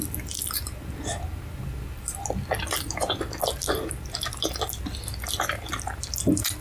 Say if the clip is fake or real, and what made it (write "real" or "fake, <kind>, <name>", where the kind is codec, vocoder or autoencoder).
real